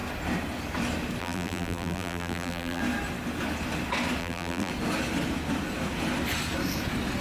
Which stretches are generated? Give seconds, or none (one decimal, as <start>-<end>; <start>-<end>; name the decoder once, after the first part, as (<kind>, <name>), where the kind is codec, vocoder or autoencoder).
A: 1.2-2.8 (vocoder, BigVGAN v2); 4.2-4.7